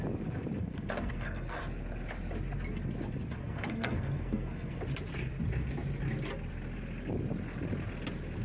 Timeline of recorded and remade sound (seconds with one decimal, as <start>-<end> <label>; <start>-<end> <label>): 0.0-0.6 recorded; 0.6-1.6 remade; 1.6-3.4 recorded; 3.4-4.8 remade; 4.8-8.4 recorded